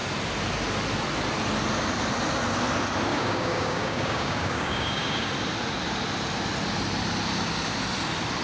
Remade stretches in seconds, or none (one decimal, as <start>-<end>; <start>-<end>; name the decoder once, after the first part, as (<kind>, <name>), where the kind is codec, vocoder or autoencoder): 3.1-5.3 (codec, DAC)